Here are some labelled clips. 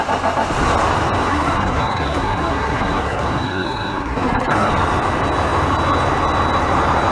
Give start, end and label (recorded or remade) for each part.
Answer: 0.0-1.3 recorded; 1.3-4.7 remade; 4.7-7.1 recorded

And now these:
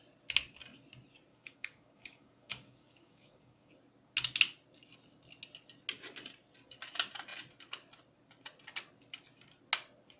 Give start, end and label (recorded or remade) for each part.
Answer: 0.0-1.3 recorded; 1.3-3.7 remade; 3.7-10.2 recorded

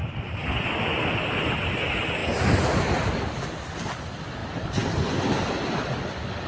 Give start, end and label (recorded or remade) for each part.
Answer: 0.0-2.2 recorded; 2.2-3.3 remade; 3.3-6.5 recorded

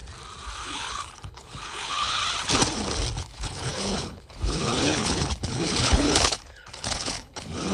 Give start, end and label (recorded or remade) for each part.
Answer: 0.0-0.6 recorded; 0.6-2.2 remade; 2.2-3.2 recorded; 3.2-7.7 remade